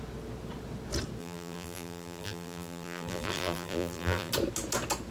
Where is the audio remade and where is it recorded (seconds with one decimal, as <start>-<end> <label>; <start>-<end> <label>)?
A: 0.0-1.2 recorded; 1.2-4.3 remade; 4.3-5.1 recorded